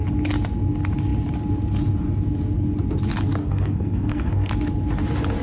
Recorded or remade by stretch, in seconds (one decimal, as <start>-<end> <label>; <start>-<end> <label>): 0.0-3.4 recorded; 3.4-4.5 remade; 4.5-5.4 recorded